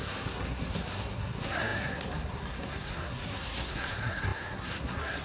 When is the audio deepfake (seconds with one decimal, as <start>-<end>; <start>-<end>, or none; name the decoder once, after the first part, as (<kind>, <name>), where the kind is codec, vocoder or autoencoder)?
0.0-5.2 (codec, SNAC)